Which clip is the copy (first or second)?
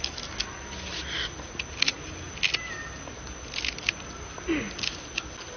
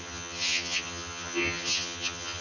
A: second